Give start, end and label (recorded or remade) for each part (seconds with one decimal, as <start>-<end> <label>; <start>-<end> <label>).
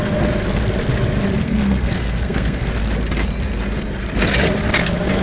0.0-1.4 recorded; 1.4-2.7 remade; 2.7-5.2 recorded